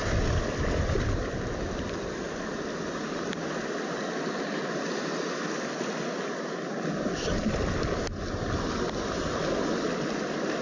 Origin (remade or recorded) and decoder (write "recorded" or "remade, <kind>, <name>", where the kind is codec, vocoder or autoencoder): recorded